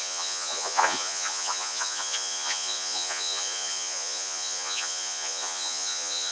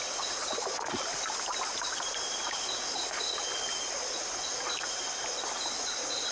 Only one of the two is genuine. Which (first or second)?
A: second